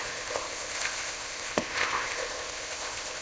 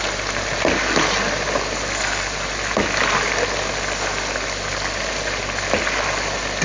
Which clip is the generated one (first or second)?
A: first